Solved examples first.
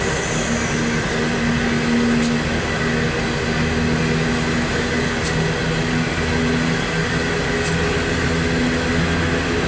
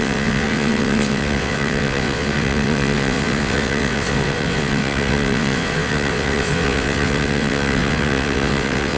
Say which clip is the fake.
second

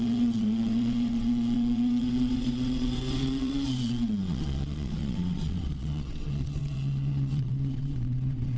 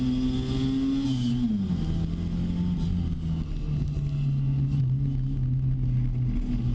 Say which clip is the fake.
first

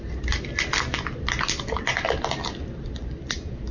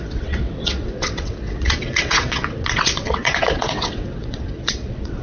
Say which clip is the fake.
second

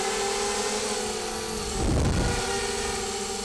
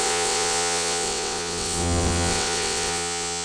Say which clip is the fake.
second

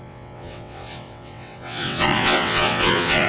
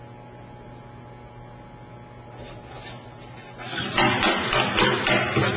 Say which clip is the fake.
first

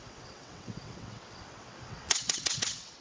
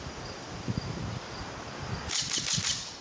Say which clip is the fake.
first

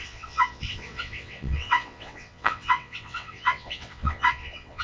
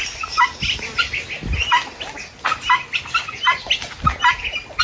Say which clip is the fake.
first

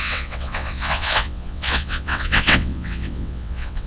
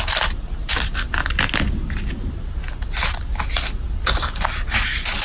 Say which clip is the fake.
first